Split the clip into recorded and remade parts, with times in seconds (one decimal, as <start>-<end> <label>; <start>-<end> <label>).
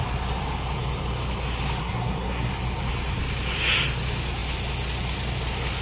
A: 0.0-1.8 recorded; 1.8-2.5 remade; 2.5-5.8 recorded